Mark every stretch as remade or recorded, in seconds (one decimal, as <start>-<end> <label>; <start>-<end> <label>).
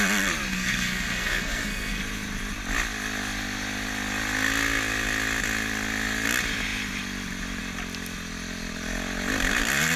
0.0-0.5 recorded; 0.5-2.0 remade; 2.0-10.0 recorded